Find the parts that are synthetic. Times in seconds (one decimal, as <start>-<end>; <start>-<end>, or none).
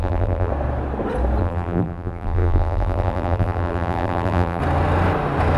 0.0-0.5; 1.4-4.6